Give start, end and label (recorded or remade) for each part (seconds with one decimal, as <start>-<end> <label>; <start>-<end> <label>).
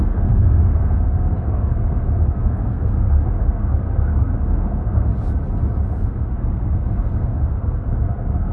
0.0-5.1 remade; 5.1-6.0 recorded; 6.0-8.5 remade